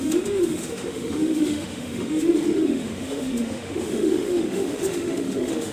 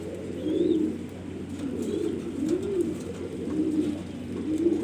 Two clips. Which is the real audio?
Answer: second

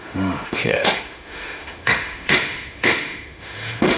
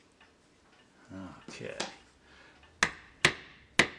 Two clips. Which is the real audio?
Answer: second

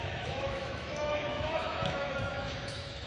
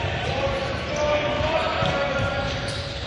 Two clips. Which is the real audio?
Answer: second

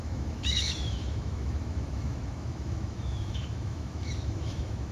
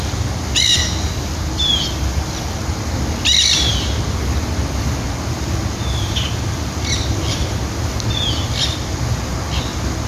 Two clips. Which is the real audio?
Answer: second